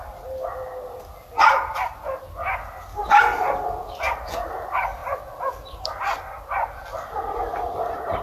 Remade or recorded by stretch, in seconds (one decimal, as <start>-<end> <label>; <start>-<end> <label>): 0.0-5.0 recorded; 5.0-8.2 remade